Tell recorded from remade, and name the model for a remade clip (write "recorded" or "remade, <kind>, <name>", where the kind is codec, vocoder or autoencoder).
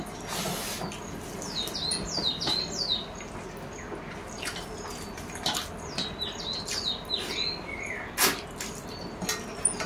recorded